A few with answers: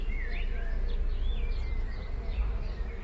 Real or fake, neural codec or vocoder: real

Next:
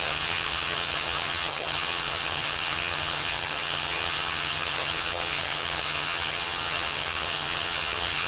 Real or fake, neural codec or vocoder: fake, vocoder, HiFi-GAN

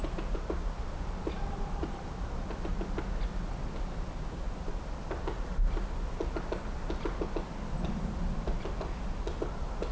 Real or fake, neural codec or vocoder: real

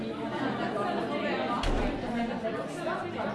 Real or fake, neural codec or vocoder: real